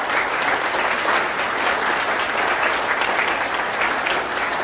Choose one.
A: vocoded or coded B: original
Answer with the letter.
B